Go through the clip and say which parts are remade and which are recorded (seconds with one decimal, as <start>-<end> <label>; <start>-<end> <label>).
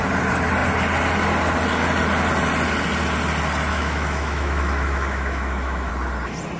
0.0-3.7 recorded; 3.7-5.9 remade; 5.9-6.6 recorded